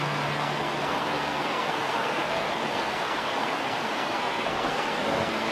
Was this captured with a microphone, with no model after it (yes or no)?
no